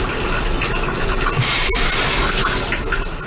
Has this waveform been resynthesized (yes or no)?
no